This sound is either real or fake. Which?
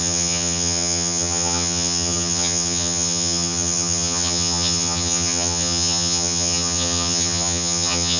fake